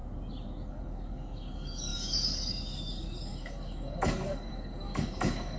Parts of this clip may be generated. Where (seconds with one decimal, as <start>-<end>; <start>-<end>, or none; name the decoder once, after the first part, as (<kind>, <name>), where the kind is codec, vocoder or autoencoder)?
0.7-5.6 (codec, DAC)